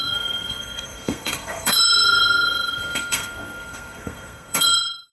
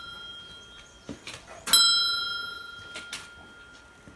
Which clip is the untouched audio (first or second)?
second